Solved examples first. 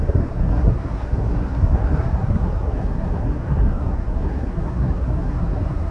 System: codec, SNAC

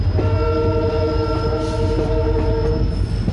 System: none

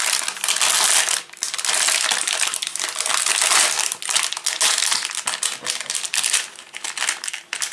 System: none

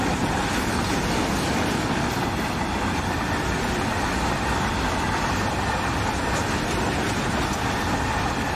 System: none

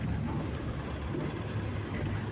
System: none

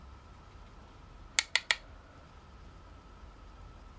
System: none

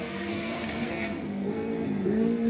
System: codec, SNAC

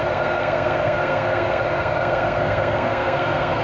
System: codec, SNAC